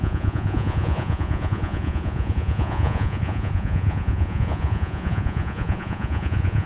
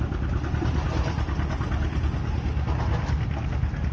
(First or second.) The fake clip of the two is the first